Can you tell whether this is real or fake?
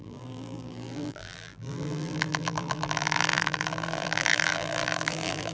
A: fake